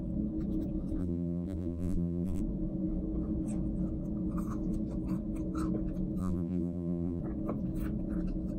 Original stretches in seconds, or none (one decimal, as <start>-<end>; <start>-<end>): 0.0-1.0; 2.4-6.2; 7.2-8.6